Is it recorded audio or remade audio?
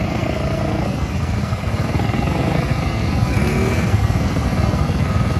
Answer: remade